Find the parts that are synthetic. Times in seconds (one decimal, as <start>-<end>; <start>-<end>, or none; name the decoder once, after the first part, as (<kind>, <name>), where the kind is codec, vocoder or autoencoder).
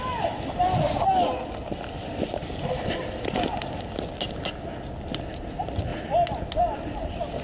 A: 2.4-3.0 (vocoder, BigVGAN v2)